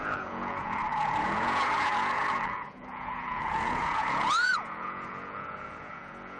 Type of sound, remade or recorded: remade